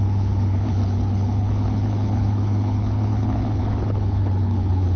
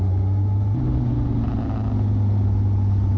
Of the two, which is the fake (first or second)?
first